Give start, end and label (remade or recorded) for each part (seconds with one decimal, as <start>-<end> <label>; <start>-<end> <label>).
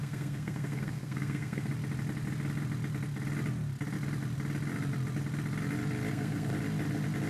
0.0-1.7 remade; 1.7-6.1 recorded; 6.1-6.5 remade; 6.5-7.3 recorded